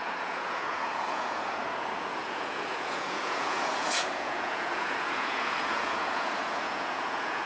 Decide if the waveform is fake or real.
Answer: fake